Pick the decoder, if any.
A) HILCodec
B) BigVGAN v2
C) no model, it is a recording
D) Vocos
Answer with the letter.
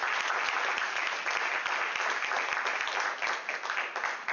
C